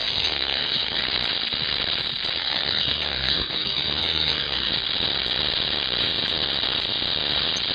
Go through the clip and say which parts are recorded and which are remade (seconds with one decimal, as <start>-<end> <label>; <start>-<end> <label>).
0.0-1.0 remade; 1.0-2.4 recorded; 2.4-4.7 remade; 4.7-7.7 recorded